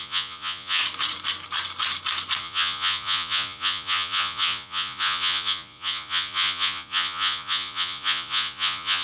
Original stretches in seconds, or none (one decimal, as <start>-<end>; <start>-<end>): 0.8-2.4